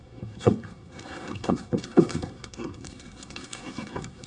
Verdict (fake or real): fake